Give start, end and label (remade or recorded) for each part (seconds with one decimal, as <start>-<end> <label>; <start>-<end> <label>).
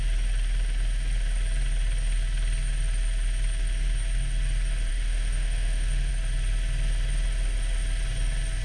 0.0-4.9 recorded; 4.9-6.1 remade; 6.1-8.6 recorded